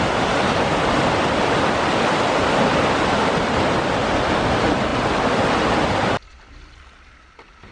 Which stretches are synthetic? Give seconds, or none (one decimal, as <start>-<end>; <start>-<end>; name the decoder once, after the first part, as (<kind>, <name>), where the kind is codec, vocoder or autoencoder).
none